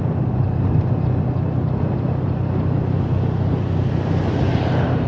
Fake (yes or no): no